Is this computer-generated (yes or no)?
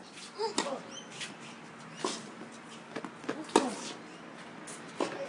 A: no